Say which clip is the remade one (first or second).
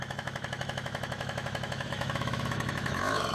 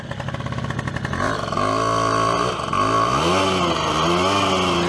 first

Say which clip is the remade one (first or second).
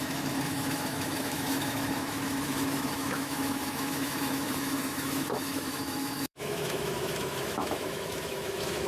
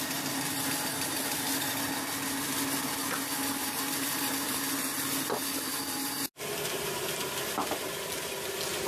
first